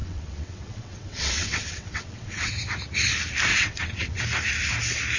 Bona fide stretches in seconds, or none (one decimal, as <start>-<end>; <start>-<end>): 2.5-3.5; 4.2-5.2